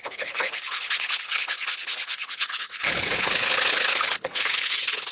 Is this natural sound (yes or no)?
no